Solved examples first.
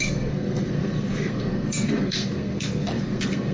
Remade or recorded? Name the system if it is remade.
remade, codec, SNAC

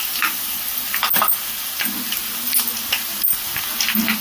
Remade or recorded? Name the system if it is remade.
recorded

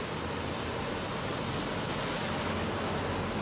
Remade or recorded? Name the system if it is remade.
recorded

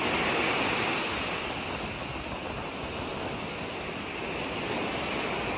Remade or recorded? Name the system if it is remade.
recorded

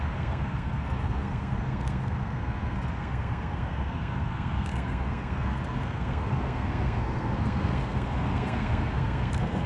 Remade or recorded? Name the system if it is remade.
remade, codec, SNAC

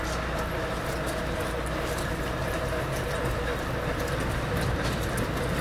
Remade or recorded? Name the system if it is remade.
recorded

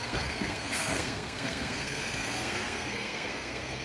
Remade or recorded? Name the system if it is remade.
remade, codec, SNAC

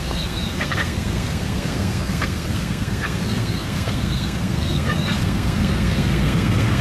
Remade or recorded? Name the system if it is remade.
remade, codec, SNAC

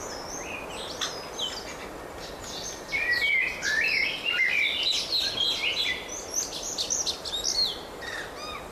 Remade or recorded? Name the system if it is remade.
recorded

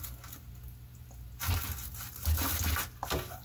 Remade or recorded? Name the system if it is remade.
recorded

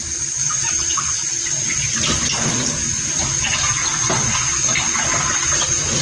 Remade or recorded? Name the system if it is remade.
recorded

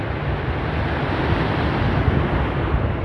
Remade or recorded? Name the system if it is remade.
recorded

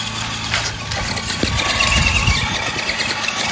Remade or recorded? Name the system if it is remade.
recorded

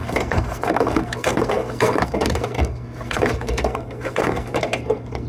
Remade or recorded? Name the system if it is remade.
remade, codec, SNAC